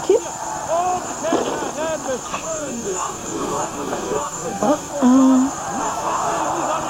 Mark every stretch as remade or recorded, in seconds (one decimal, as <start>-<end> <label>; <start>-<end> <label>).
0.0-2.3 recorded; 2.3-4.9 remade; 4.9-5.8 recorded; 5.8-6.4 remade; 6.4-6.9 recorded